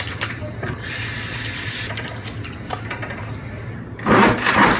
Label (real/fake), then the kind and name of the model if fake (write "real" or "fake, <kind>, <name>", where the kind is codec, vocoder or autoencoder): real